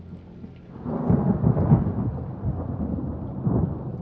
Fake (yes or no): no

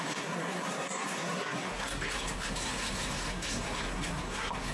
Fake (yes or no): yes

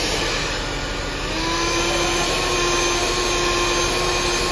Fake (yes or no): no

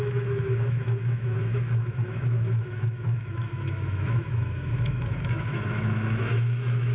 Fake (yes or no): yes